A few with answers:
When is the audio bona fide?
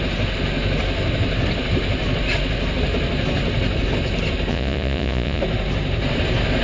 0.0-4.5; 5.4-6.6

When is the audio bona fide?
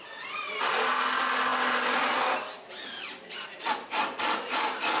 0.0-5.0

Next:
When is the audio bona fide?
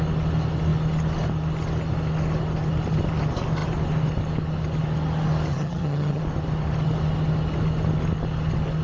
0.0-5.5; 6.2-8.8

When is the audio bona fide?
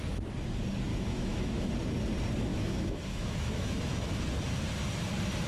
0.0-0.9; 1.7-2.5; 4.2-5.5